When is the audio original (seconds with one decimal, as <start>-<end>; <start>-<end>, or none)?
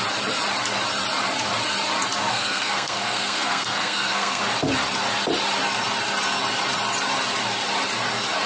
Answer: 0.0-2.3; 4.4-8.5